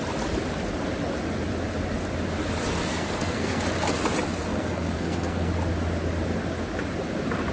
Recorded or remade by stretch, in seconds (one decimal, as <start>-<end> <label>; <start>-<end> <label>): 0.0-2.9 recorded; 2.9-3.6 remade; 3.6-4.5 recorded; 4.5-5.5 remade; 5.5-7.5 recorded